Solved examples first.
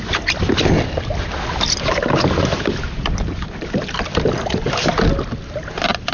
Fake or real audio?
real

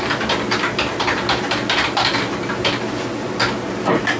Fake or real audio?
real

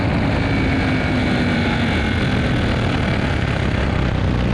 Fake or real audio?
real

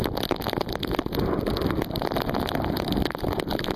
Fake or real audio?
real